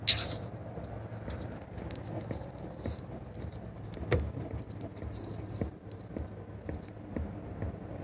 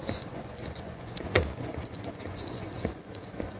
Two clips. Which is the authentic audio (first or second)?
first